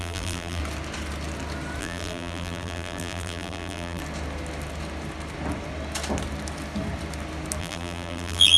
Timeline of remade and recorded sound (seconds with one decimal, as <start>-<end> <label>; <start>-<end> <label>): 0.0-0.6 remade; 0.6-1.8 recorded; 1.8-4.0 remade; 4.0-7.6 recorded; 7.6-8.6 remade